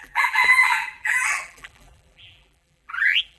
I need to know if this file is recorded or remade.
remade